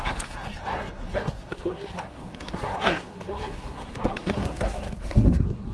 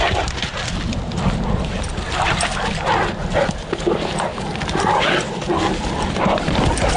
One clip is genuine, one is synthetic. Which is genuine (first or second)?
second